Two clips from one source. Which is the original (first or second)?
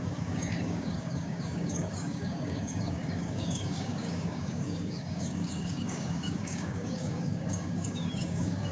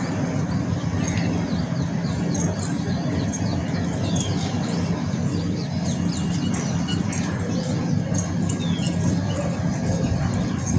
second